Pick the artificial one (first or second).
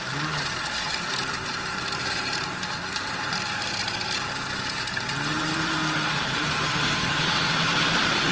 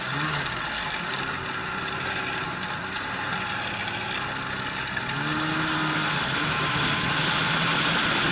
first